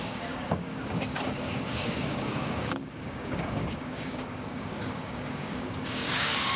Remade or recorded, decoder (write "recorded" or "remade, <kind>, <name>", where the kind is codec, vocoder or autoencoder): remade, codec, DAC